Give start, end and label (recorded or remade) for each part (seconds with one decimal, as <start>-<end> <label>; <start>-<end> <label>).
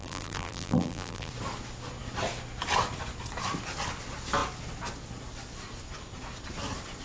0.0-1.3 remade; 1.3-7.0 recorded